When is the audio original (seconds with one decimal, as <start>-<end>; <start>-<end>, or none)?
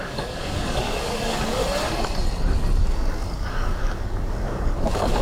1.6-2.8